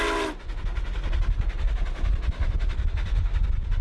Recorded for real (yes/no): yes